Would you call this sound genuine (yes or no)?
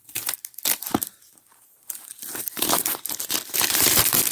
no